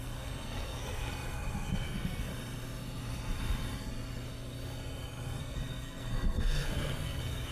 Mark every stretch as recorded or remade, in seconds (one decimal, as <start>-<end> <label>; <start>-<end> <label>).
0.0-2.3 remade; 2.3-5.4 recorded; 5.4-7.5 remade